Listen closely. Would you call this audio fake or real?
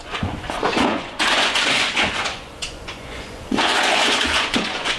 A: fake